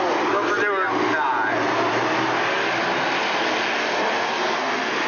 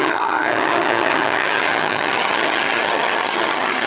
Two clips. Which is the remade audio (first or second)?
second